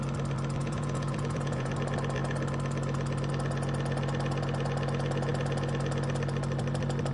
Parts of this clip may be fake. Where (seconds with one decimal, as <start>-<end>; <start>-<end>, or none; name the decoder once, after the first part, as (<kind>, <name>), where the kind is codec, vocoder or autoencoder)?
0.6-1.7 (vocoder, Vocos)